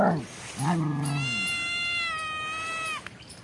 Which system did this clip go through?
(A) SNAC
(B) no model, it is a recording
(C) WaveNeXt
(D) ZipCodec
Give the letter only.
B